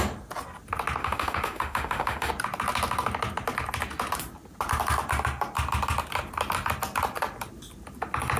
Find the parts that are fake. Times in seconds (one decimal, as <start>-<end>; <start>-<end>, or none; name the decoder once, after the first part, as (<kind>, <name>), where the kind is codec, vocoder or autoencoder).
1.0-2.3 (autoencoder, DAC-VAE)